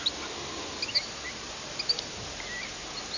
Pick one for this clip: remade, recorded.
recorded